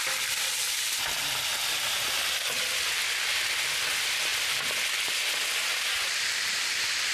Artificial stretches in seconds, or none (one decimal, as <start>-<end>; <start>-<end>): none